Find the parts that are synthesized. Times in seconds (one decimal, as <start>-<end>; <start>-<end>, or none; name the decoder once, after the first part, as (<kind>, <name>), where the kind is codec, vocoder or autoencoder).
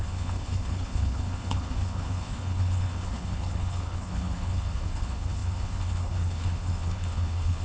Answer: 0.0-7.6 (codec, HILCodec)